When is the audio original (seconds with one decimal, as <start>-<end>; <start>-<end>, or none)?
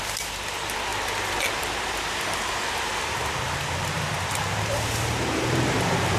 0.0-6.2